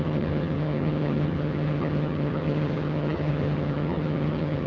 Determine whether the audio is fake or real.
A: fake